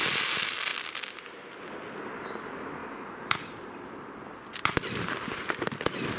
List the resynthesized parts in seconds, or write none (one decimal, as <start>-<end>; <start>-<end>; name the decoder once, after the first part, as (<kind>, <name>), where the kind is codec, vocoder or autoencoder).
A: none